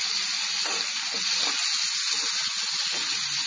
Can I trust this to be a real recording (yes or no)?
yes